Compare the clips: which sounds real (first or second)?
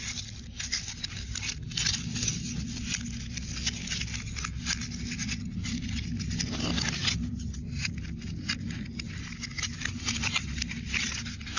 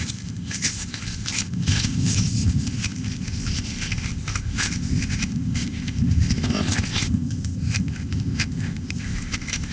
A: first